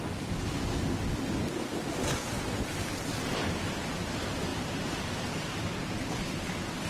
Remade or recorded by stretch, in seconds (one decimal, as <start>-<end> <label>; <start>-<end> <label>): 0.0-4.5 recorded; 4.5-5.7 remade; 5.7-6.9 recorded